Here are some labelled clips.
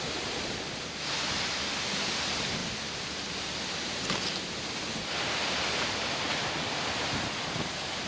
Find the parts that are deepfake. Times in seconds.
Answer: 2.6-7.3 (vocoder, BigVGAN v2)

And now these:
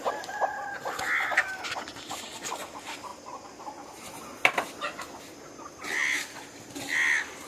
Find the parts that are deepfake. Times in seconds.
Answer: none

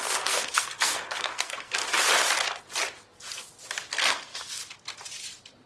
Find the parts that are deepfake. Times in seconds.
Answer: 0.0-1.8 (codec, SNAC); 3.9-4.6

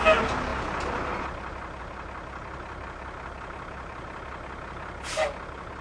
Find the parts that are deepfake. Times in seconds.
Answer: none

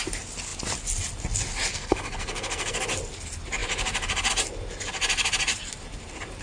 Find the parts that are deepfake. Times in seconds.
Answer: 1.7-2.8 (codec, SNAC)